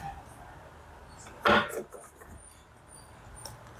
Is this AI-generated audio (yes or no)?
no